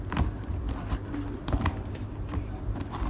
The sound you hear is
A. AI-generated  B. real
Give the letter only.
B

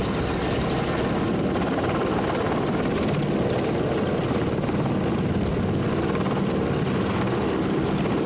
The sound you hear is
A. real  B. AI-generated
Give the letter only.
A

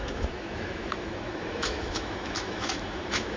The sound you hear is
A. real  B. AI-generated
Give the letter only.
B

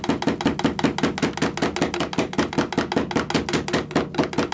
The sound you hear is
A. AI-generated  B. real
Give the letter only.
B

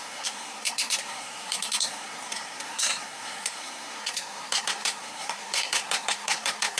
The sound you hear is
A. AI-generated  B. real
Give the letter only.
A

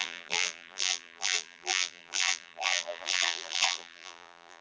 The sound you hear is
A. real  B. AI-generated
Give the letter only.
B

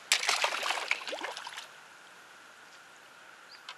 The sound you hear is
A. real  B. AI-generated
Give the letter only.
A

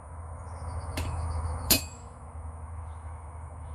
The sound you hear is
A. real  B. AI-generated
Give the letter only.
B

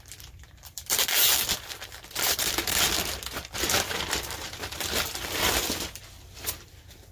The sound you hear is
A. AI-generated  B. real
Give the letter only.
A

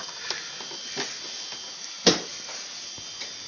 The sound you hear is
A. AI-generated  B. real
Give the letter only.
B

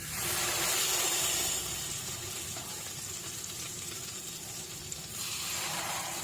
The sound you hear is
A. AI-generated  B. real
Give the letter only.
A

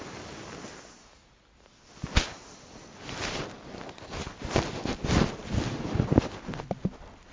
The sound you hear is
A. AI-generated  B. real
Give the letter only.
B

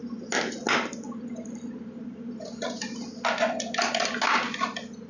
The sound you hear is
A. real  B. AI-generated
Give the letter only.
A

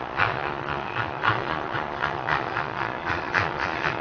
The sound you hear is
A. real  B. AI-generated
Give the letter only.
B